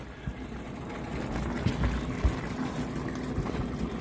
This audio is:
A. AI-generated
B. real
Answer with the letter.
B